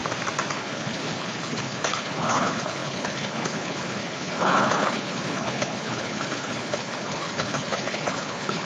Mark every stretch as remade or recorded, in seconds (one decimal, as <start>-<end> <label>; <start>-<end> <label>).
0.0-0.5 recorded; 0.5-8.6 remade

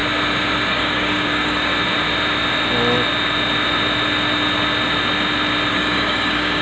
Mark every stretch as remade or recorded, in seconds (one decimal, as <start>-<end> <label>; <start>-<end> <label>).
0.0-0.7 recorded; 0.7-1.7 remade; 1.7-5.7 recorded; 5.7-6.6 remade

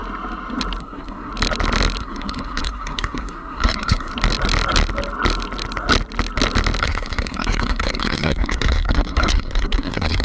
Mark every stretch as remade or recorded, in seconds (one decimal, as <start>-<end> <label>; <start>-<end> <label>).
0.0-0.8 recorded; 0.8-1.3 remade; 1.3-2.0 recorded; 2.0-4.1 remade; 4.1-6.8 recorded; 6.8-10.2 remade

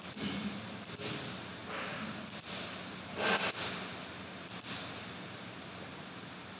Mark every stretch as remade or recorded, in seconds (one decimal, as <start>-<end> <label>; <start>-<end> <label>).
0.0-6.6 recorded

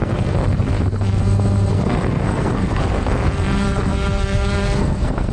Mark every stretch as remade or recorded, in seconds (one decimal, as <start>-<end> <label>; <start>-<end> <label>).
0.0-1.2 remade; 1.2-1.7 recorded; 1.7-5.3 remade

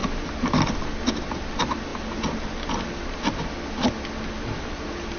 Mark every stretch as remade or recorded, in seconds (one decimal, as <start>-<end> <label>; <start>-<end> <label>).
0.0-5.2 recorded

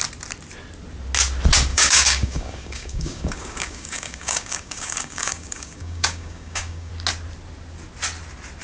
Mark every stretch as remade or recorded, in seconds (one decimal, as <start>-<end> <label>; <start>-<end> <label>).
0.0-1.7 recorded; 1.7-6.9 remade; 6.9-8.6 recorded